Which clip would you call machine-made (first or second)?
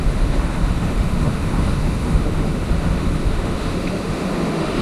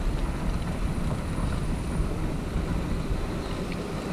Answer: first